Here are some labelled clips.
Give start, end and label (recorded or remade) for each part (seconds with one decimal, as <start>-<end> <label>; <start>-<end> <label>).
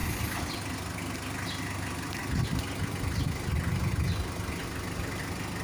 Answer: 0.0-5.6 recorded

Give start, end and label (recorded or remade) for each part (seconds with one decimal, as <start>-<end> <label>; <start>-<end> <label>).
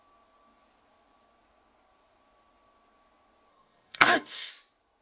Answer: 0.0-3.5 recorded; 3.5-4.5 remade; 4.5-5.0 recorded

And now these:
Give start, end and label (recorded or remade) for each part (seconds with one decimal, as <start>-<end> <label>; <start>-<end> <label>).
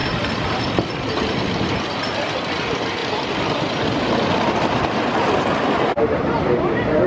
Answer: 0.0-0.9 remade; 0.9-3.0 recorded; 3.0-4.0 remade; 4.0-7.1 recorded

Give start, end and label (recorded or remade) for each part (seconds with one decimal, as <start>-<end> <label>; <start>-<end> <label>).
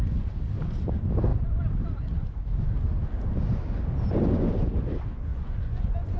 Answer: 0.0-5.3 recorded; 5.3-6.2 remade